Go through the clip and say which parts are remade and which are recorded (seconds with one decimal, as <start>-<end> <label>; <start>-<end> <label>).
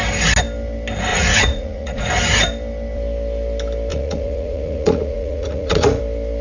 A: 0.0-1.1 recorded; 1.1-2.1 remade; 2.1-3.9 recorded; 3.9-6.0 remade; 6.0-6.4 recorded